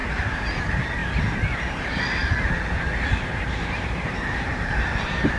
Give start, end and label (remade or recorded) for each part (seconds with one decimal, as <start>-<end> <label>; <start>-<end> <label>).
0.0-2.2 remade; 2.2-3.1 recorded; 3.1-5.4 remade

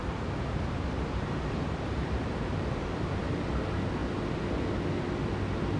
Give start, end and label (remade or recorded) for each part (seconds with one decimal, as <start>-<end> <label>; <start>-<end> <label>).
0.0-3.5 remade; 3.5-5.8 recorded

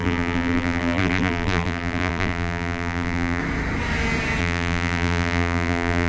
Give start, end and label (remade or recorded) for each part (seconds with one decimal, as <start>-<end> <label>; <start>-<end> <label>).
0.0-3.4 remade; 3.4-4.4 recorded; 4.4-6.1 remade

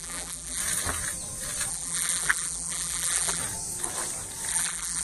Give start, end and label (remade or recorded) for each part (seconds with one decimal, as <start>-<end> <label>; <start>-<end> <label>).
0.0-0.6 remade; 0.6-1.7 recorded; 1.7-3.4 remade; 3.4-4.5 recorded; 4.5-5.0 remade

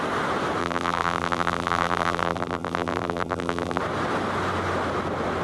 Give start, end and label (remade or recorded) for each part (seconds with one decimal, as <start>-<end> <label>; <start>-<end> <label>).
0.0-0.6 recorded; 0.6-3.8 remade; 3.8-5.4 recorded

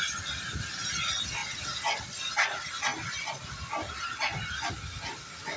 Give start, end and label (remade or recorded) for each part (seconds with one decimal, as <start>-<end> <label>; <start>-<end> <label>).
0.0-5.6 recorded